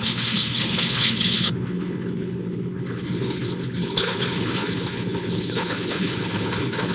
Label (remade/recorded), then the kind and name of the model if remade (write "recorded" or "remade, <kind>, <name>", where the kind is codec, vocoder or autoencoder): remade, codec, HILCodec